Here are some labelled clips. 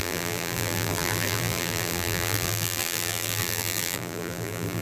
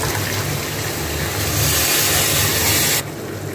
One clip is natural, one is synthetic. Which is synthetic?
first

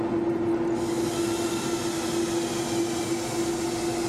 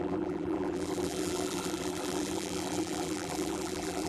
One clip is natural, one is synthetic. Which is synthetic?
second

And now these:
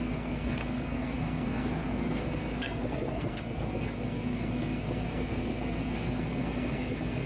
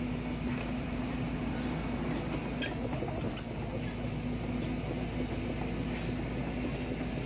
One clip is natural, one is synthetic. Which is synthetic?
first